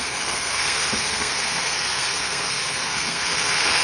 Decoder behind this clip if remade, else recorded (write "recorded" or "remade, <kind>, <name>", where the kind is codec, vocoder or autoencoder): remade, codec, SNAC